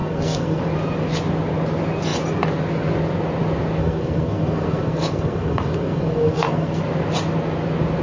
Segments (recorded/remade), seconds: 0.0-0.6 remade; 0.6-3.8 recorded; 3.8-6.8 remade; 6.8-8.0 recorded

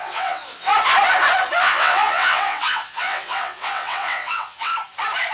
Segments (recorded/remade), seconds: 0.0-0.7 remade; 0.7-1.6 recorded; 1.6-4.7 remade; 4.7-5.3 recorded

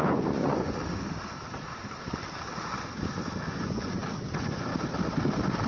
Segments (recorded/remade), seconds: 0.0-0.8 remade; 0.8-3.5 recorded; 3.5-4.7 remade; 4.7-5.7 recorded